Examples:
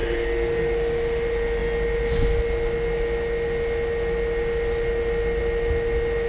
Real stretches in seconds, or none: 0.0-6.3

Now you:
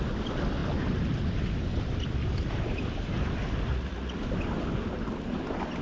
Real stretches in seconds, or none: 0.0-3.7; 4.2-5.8

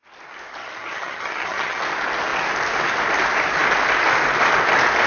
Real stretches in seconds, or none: 0.0-0.6; 1.8-5.1

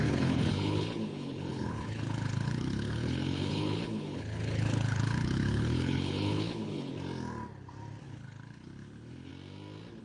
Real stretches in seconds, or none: 6.9-8.0; 9.3-10.0